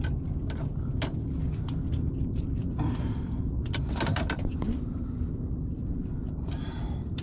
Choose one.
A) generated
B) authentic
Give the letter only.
B